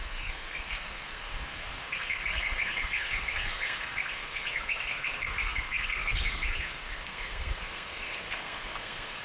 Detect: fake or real fake